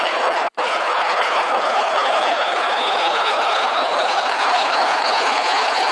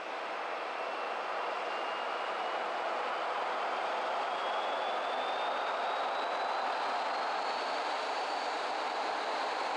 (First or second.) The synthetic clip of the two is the first